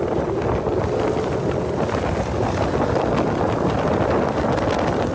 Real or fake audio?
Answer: real